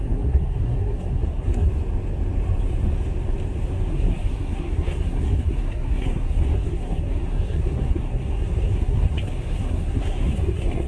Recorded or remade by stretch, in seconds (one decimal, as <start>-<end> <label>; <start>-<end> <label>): 0.0-1.7 remade; 1.7-3.9 recorded; 3.9-10.9 remade